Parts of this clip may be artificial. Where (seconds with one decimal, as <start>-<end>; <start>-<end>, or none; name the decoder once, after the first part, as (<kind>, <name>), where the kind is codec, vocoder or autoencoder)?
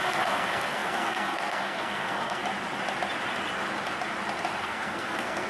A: 0.0-2.4 (codec, SNAC); 4.6-5.5